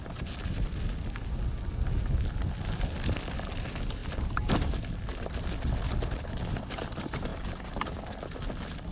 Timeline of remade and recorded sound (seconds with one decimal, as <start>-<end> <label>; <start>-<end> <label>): 0.0-8.9 recorded